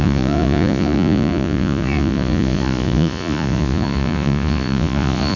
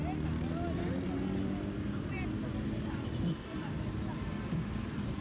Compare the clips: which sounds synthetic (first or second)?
first